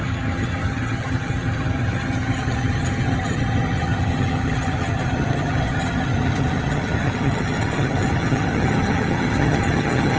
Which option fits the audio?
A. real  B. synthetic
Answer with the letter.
B